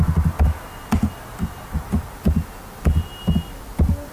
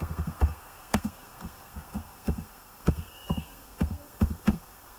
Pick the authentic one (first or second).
first